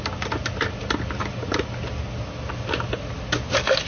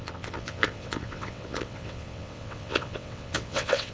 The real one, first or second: first